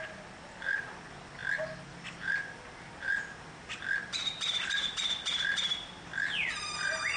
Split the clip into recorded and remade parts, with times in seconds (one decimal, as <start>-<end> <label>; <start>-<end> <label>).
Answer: 0.0-7.2 recorded